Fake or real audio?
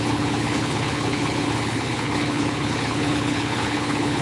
fake